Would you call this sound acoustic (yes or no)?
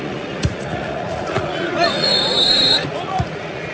no